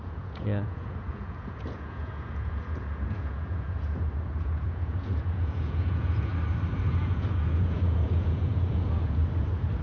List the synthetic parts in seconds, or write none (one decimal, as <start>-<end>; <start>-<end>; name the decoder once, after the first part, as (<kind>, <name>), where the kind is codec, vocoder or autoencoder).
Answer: 0.0-6.3 (vocoder, Vocos); 6.8-9.2